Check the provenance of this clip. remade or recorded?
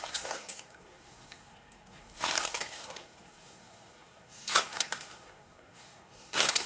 remade